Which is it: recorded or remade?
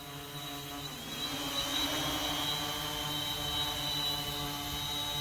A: recorded